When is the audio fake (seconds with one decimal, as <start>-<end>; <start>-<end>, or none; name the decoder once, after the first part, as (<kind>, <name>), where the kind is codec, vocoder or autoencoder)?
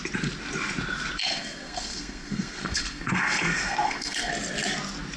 1.2-4.3 (codec, SNAC)